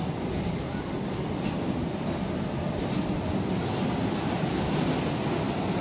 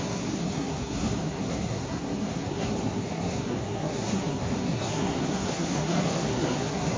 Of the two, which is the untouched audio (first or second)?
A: first